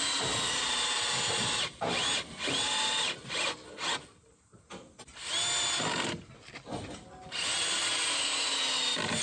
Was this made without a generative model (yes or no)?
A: yes